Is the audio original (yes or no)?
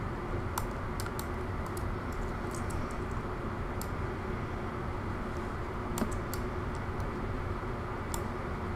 yes